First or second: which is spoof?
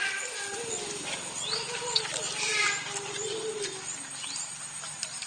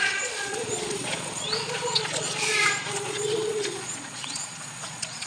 second